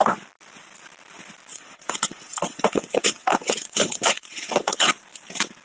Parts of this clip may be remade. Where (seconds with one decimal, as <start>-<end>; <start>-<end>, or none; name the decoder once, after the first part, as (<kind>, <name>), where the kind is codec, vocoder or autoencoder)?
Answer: 1.5-4.9 (vocoder, WaveNeXt)